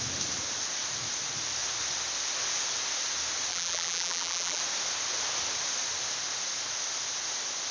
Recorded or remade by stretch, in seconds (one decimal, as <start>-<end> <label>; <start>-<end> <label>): 0.0-3.5 recorded; 3.5-4.6 remade; 4.6-7.7 recorded